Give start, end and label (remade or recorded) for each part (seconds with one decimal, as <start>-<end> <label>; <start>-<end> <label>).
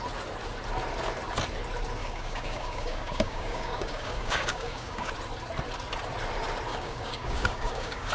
0.0-2.0 recorded; 2.0-5.1 remade; 5.1-6.7 recorded; 6.7-8.1 remade